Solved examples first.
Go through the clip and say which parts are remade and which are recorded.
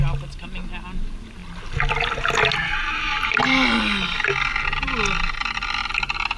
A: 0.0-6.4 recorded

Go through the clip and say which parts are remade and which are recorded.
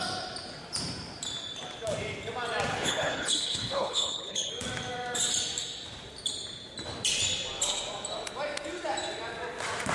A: 0.0-2.7 recorded; 2.7-4.5 remade; 4.5-9.9 recorded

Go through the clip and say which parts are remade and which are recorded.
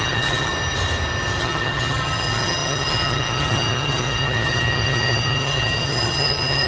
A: 0.0-0.5 remade; 0.5-1.4 recorded; 1.4-6.7 remade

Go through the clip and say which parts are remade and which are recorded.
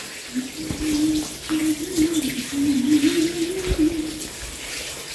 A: 0.0-5.1 recorded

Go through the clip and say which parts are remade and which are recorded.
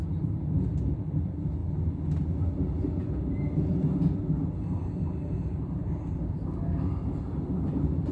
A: 0.0-8.1 recorded